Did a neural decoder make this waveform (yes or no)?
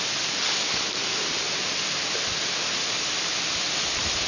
no